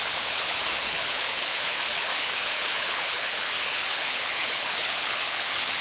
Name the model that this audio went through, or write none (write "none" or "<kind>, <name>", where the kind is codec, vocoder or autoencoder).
codec, HILCodec